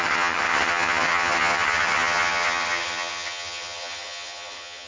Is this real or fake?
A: fake